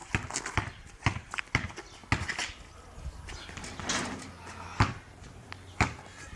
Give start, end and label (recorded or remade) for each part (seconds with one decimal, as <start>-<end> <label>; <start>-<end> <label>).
0.0-6.4 recorded